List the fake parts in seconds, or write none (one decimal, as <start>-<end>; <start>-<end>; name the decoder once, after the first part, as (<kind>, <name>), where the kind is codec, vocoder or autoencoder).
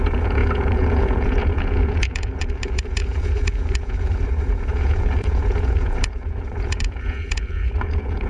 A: 0.0-8.3 (vocoder, Vocos)